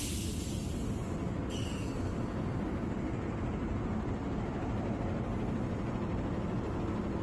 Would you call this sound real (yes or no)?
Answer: yes